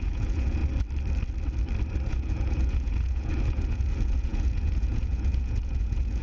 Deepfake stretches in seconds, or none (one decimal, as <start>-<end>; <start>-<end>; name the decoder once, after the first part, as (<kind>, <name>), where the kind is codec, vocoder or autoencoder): 0.0-0.6 (vocoder, Vocos); 2.1-6.2